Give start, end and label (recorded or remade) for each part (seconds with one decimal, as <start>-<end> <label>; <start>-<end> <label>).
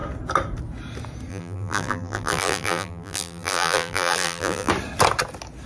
0.0-1.3 recorded; 1.3-4.7 remade; 4.7-5.7 recorded